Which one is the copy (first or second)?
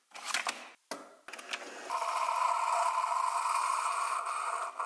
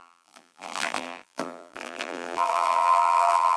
second